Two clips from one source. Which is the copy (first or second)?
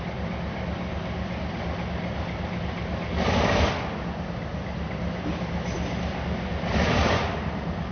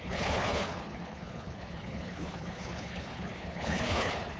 second